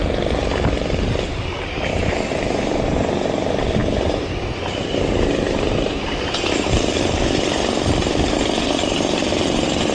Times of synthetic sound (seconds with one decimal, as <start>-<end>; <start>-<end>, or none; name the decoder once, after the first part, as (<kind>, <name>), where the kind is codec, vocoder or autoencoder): 0.0-9.3 (vocoder, BigVGAN v2)